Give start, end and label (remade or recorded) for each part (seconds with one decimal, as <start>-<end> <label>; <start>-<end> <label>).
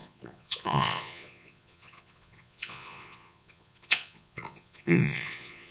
0.0-5.7 remade